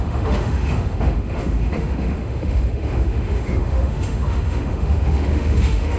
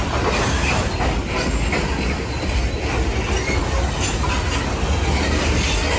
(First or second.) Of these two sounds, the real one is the second